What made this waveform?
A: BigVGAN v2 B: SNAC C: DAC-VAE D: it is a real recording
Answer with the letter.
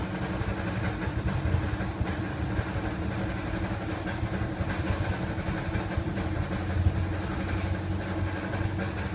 D